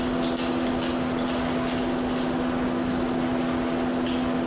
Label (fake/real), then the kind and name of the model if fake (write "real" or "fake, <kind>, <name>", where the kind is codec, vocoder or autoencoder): real